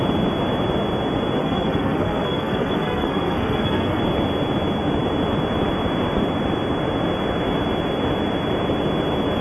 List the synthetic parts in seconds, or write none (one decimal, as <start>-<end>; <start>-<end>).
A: 1.4-4.0